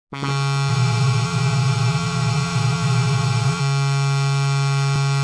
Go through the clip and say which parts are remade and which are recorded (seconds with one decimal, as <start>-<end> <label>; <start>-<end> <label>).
0.0-0.7 recorded; 0.7-3.6 remade; 3.6-5.2 recorded